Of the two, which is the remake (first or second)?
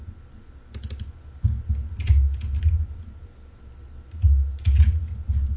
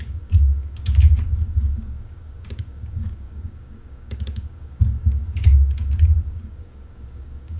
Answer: second